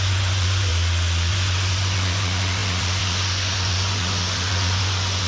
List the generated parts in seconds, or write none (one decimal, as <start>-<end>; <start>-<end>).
0.0-0.7; 1.3-5.3